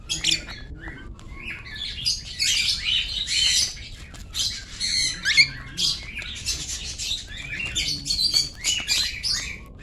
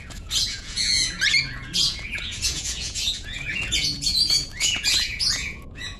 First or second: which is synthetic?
second